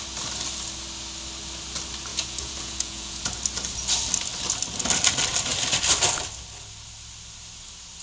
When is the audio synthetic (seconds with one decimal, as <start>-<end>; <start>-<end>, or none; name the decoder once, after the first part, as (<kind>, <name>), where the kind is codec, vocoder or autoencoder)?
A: 2.1-3.2 (vocoder, Vocos)

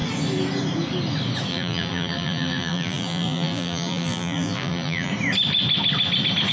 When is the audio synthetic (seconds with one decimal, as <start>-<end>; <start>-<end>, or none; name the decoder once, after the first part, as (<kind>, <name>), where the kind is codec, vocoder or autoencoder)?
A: 1.5-5.1 (vocoder, BigVGAN v2)

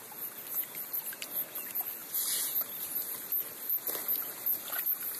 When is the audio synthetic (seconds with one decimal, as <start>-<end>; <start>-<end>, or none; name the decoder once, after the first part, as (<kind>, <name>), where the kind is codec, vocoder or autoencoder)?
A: none

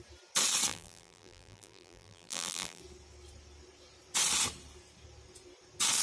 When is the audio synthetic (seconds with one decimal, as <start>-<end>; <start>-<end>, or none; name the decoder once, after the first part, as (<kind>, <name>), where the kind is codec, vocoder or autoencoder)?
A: 0.7-2.8 (vocoder, BigVGAN v2)

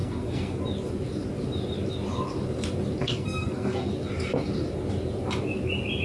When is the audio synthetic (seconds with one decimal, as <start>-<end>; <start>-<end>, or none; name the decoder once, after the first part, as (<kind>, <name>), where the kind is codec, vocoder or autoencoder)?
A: 0.0-0.6 (codec, SNAC); 3.0-3.9